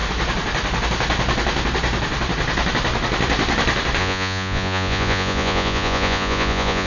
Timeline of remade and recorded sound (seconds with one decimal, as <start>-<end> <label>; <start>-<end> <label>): 0.0-4.0 recorded; 4.0-6.9 remade